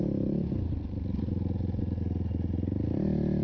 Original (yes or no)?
yes